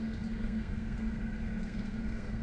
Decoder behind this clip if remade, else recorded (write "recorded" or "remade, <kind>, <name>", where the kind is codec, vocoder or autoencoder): remade, codec, SNAC